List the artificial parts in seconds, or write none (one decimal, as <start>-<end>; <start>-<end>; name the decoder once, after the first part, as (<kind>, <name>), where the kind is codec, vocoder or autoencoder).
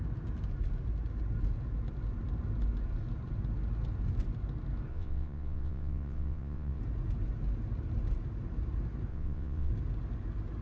4.9-6.8 (vocoder, WaveNeXt); 9.1-9.7